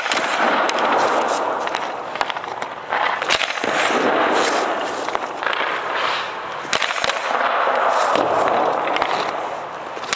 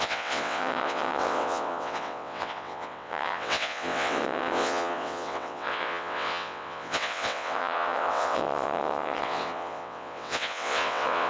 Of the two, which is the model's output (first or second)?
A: second